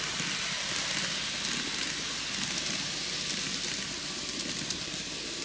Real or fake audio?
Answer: fake